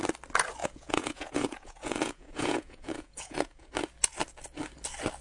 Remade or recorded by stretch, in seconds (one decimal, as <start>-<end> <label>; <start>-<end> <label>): 0.0-0.6 recorded; 0.6-3.7 remade; 3.7-5.2 recorded